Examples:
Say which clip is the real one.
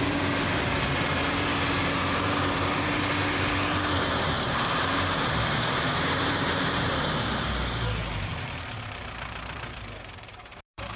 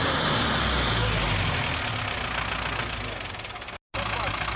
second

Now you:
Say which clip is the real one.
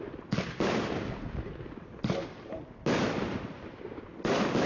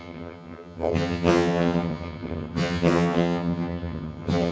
first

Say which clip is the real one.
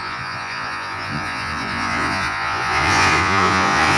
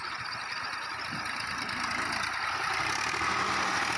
second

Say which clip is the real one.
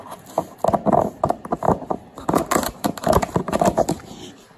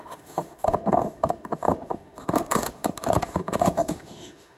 first